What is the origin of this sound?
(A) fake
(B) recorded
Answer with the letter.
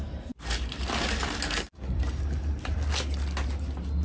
B